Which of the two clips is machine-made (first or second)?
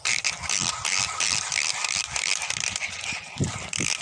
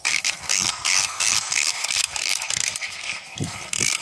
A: second